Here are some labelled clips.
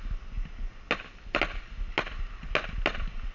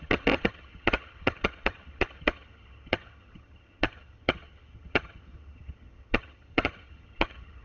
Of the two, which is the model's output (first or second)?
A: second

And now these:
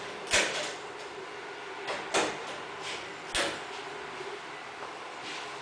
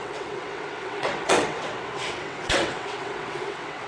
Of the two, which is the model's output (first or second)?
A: second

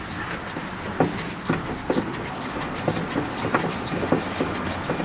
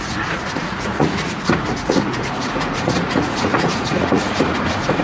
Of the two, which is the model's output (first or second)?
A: second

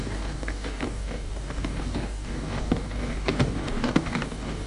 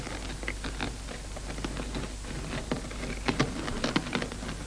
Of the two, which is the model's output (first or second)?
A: first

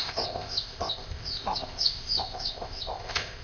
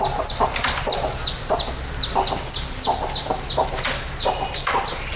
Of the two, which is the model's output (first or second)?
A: first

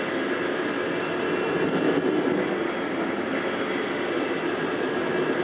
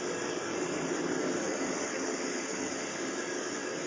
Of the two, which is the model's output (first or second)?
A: second